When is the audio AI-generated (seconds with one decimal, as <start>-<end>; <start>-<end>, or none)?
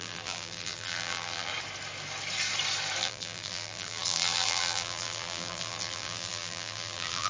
0.0-1.5; 3.0-7.3